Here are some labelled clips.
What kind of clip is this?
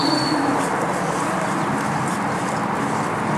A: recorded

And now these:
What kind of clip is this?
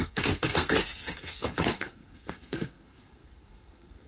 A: remade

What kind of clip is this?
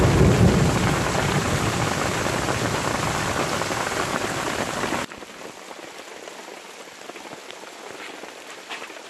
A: recorded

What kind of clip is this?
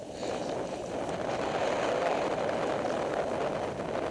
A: recorded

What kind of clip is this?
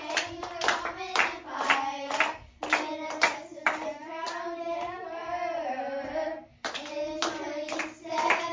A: recorded